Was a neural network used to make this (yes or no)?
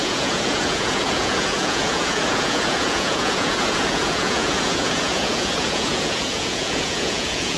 yes